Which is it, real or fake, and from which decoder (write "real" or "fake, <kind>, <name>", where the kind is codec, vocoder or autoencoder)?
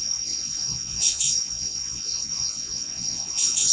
fake, vocoder, WaveNeXt